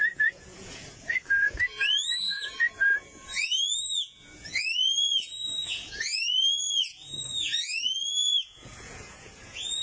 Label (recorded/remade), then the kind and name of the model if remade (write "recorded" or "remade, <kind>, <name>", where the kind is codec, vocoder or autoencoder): remade, vocoder, Vocos